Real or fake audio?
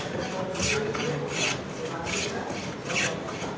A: real